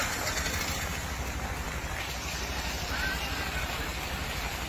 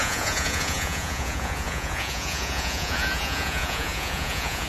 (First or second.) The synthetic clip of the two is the second